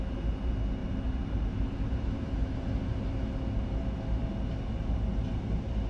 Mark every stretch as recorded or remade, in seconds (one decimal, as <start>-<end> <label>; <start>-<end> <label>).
0.0-0.8 recorded; 0.8-3.1 remade; 3.1-5.9 recorded

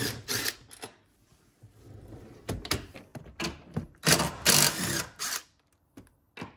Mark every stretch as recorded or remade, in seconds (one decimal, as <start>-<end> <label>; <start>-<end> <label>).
0.0-1.3 recorded; 1.3-2.2 remade; 2.2-3.1 recorded; 3.1-5.0 remade; 5.0-6.6 recorded

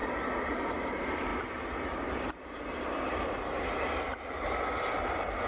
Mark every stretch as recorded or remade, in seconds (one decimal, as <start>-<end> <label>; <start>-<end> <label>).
0.0-1.3 recorded; 1.3-4.6 remade; 4.6-5.5 recorded

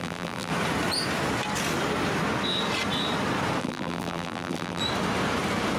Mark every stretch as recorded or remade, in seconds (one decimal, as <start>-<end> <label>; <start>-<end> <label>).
0.0-0.5 remade; 0.5-3.6 recorded; 3.6-4.8 remade; 4.8-5.8 recorded

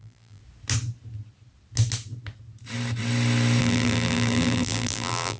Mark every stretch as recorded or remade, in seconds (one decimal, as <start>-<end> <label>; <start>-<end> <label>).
0.0-0.4 remade; 0.4-3.6 recorded; 3.6-5.4 remade